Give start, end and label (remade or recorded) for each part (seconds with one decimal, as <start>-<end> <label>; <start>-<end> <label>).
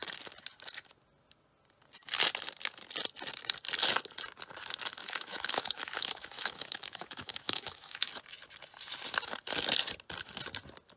0.0-5.0 recorded; 5.0-8.1 remade; 8.1-11.0 recorded